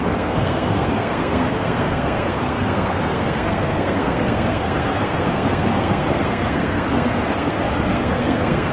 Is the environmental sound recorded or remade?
remade